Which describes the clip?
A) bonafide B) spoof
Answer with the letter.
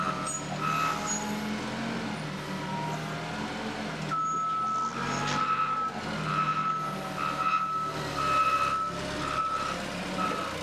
A